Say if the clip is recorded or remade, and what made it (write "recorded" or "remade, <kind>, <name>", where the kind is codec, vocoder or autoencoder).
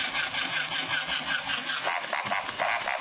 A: recorded